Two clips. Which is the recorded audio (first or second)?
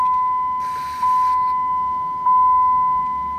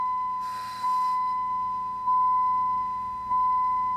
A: first